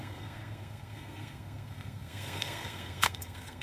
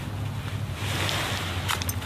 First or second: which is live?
second